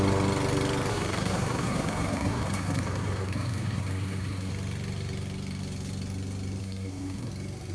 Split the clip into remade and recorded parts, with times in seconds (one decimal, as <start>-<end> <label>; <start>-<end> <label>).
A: 0.0-0.9 recorded; 0.9-4.5 remade; 4.5-6.6 recorded; 6.6-7.3 remade; 7.3-7.7 recorded